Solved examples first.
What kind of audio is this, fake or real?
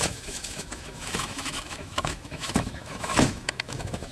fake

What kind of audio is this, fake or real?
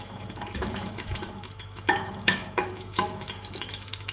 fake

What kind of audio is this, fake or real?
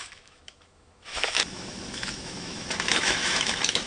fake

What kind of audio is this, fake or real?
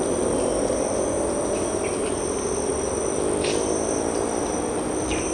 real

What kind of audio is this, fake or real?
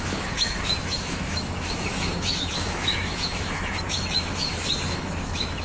fake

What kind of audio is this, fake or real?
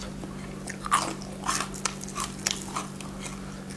real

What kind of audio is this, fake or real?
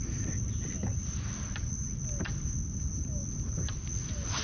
real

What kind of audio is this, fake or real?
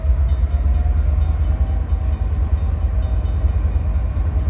real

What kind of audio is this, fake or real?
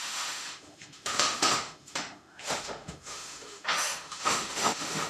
fake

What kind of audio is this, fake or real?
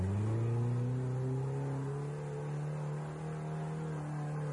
real